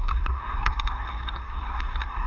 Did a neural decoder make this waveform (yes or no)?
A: yes